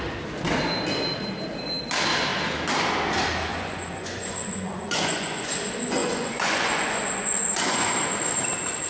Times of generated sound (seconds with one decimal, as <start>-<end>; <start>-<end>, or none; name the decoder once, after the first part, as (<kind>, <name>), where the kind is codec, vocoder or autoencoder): 3.5-5.5 (vocoder, Vocos); 6.0-7.9